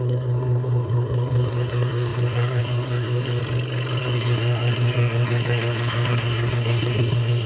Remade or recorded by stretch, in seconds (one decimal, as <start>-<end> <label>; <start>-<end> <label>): 0.0-3.4 remade; 3.4-4.0 recorded; 4.0-7.5 remade